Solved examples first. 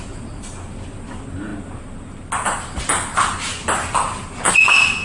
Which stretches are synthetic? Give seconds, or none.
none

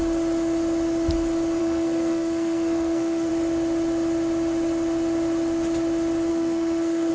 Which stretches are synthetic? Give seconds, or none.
1.6-3.3; 6.3-7.1

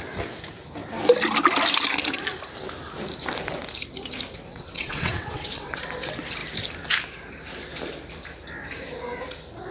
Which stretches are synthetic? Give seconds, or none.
4.5-5.8